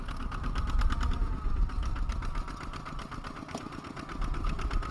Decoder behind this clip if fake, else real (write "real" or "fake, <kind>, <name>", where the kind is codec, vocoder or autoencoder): real